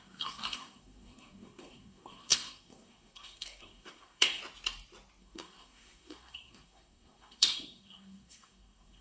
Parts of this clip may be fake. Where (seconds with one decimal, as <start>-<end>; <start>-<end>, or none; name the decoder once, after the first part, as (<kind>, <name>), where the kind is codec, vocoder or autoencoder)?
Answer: 0.0-4.4 (codec, SNAC); 5.2-9.0